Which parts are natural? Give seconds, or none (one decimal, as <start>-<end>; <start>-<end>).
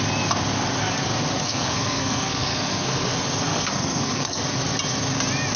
0.0-1.4; 3.1-3.5; 4.4-5.6